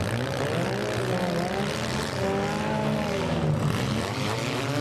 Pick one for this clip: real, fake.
real